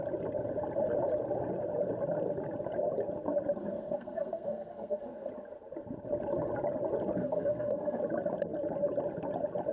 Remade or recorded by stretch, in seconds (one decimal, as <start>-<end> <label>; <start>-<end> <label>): 0.0-3.6 recorded; 3.6-5.3 remade; 5.3-7.2 recorded; 7.2-8.0 remade; 8.0-9.7 recorded